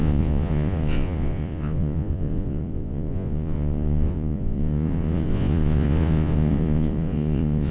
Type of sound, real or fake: fake